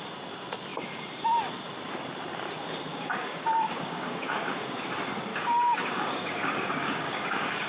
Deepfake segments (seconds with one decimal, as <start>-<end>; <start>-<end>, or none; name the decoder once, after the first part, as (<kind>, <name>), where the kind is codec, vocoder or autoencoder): 2.9-4.5 (codec, DAC); 5.3-7.7